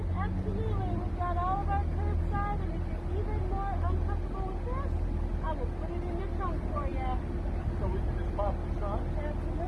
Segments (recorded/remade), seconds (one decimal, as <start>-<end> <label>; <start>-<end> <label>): 0.0-9.7 recorded

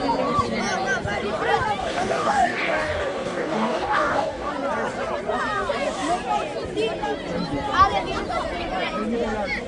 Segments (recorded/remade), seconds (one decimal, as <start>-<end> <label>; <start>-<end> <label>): 0.0-1.8 recorded; 1.8-4.5 remade; 4.5-9.7 recorded

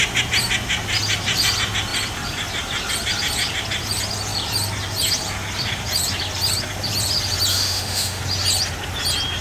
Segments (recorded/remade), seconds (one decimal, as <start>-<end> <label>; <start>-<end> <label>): 0.0-7.5 recorded; 7.5-8.2 remade; 8.2-9.4 recorded

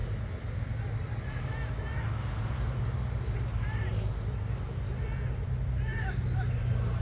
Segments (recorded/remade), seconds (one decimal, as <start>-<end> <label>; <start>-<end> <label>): 0.0-7.0 recorded

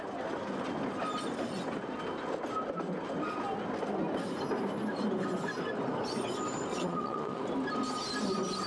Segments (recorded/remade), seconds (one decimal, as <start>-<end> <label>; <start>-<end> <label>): 0.0-6.7 recorded; 6.7-7.4 remade; 7.4-8.7 recorded